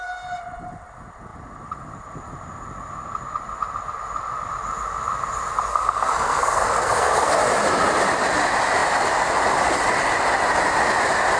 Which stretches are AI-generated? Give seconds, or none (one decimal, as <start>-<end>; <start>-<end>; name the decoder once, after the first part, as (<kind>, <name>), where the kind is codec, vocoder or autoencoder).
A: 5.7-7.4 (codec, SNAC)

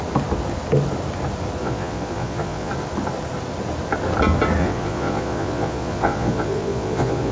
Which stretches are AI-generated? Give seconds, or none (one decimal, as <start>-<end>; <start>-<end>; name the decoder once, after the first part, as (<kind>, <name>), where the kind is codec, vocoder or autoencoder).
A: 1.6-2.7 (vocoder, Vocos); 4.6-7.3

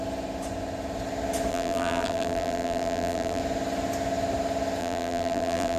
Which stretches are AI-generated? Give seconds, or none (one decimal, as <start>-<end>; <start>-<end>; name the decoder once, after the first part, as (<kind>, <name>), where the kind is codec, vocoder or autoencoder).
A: 1.5-3.4 (vocoder, BigVGAN v2); 4.8-5.8

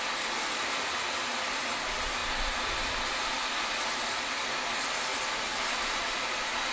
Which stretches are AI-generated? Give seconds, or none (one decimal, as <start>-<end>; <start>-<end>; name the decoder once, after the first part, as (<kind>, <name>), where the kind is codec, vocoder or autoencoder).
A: none

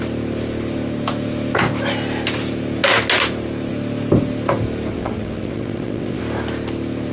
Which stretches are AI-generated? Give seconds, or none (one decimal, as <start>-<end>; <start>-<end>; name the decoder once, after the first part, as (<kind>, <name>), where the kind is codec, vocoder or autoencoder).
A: 4.9-6.2 (vocoder, WaveNeXt)